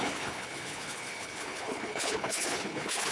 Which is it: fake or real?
fake